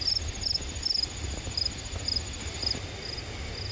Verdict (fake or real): real